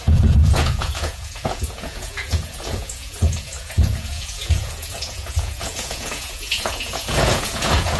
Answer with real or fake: fake